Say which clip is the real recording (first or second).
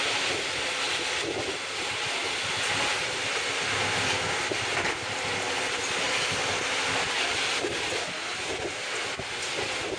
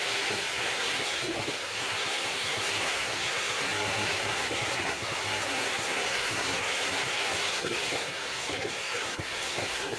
first